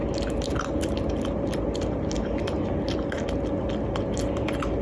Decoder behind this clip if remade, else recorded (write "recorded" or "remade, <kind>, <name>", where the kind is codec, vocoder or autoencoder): recorded